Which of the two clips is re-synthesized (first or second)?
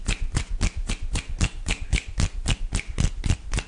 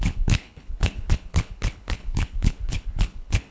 second